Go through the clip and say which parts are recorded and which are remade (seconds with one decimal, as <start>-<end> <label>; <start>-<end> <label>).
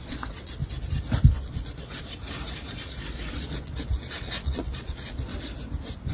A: 0.0-0.6 remade; 0.6-1.3 recorded; 1.3-1.9 remade; 1.9-2.7 recorded; 2.7-5.3 remade; 5.3-6.1 recorded